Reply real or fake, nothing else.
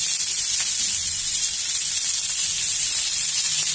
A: real